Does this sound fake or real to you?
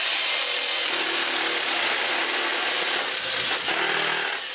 real